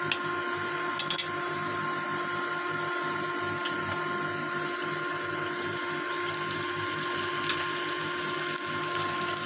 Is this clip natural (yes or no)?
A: yes